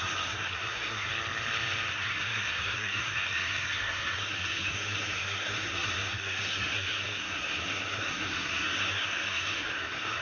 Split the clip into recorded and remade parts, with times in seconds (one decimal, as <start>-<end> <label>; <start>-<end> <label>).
0.0-1.1 remade; 1.1-1.9 recorded; 1.9-10.2 remade

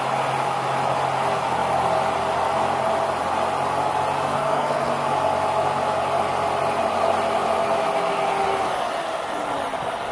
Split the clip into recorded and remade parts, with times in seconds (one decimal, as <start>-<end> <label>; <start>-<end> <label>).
0.0-4.3 recorded; 4.3-4.9 remade; 4.9-10.1 recorded

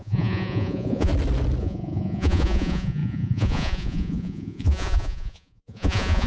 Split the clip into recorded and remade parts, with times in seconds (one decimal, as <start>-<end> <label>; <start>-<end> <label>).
0.0-1.1 remade; 1.1-1.6 recorded; 1.6-6.3 remade

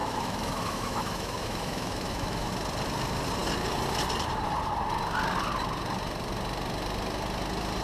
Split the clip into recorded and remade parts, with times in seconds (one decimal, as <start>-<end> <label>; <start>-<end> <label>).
0.0-2.5 remade; 2.5-7.8 recorded

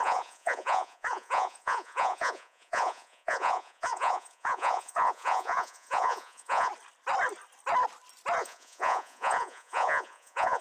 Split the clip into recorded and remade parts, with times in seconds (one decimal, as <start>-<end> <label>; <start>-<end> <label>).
0.0-6.7 remade; 6.7-8.4 recorded; 8.4-10.6 remade

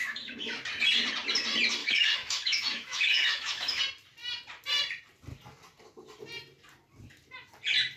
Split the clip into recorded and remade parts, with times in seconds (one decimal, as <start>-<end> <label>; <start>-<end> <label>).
0.0-0.6 remade; 0.6-1.8 recorded; 1.8-3.8 remade; 3.8-8.0 recorded

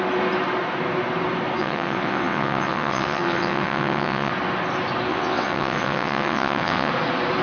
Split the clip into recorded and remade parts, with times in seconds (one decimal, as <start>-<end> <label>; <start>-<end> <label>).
0.0-1.6 recorded; 1.6-4.3 remade; 4.3-5.1 recorded; 5.1-6.9 remade; 6.9-7.4 recorded

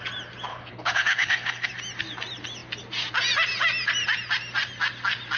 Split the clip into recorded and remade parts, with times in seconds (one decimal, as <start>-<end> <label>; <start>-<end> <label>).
0.0-0.5 recorded; 0.5-1.7 remade; 1.7-5.4 recorded